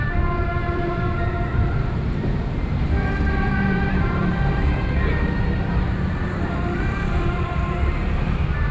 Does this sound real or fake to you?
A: fake